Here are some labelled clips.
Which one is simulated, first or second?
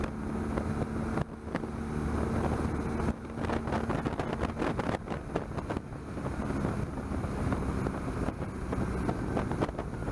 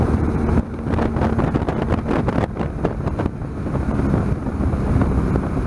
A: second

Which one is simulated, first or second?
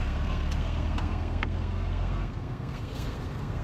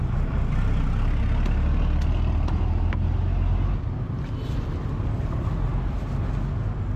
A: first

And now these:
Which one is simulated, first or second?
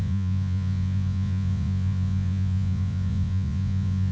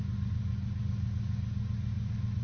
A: first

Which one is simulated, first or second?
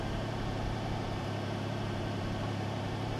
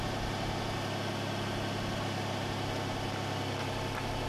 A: first